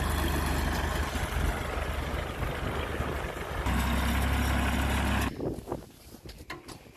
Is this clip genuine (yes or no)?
yes